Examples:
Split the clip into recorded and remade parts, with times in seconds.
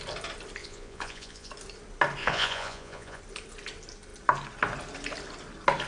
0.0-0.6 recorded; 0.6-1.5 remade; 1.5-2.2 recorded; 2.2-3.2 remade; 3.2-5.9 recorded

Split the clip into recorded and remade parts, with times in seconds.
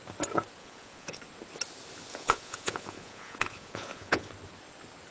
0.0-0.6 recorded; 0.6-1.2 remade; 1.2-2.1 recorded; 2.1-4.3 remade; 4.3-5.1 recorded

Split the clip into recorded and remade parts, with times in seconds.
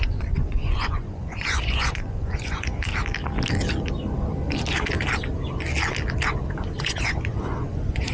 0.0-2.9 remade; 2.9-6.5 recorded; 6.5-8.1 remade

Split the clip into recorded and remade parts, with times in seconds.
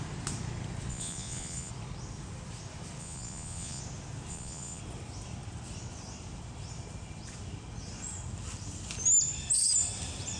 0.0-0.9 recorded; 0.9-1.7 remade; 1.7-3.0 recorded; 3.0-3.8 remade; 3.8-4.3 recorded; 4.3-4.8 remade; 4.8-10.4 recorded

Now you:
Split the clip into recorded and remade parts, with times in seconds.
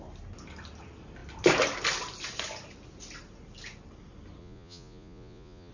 0.0-4.4 recorded; 4.4-5.7 remade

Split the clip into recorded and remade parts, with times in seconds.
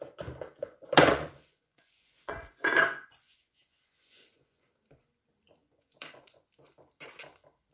0.0-0.6 recorded; 0.6-4.7 remade; 4.7-5.6 recorded; 5.6-6.5 remade; 6.5-7.7 recorded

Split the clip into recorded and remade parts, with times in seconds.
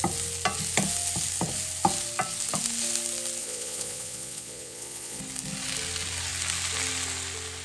0.0-3.4 recorded; 3.4-5.2 remade; 5.2-7.6 recorded